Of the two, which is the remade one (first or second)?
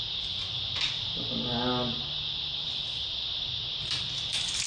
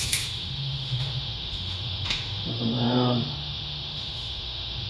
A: second